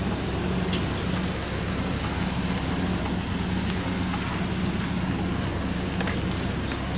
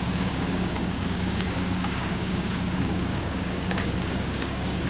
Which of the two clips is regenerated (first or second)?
second